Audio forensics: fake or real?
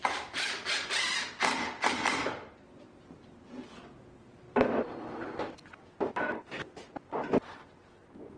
real